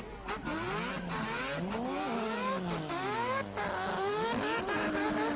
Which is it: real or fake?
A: real